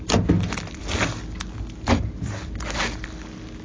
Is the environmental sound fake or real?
real